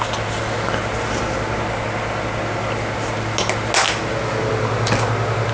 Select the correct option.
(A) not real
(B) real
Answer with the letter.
B